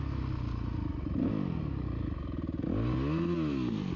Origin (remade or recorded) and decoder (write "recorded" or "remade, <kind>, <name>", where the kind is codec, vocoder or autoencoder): recorded